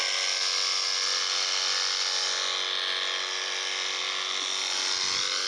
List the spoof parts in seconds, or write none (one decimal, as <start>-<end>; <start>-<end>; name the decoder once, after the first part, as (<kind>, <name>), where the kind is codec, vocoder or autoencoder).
none